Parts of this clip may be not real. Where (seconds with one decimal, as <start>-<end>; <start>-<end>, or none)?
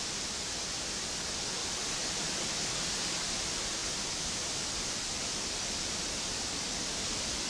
none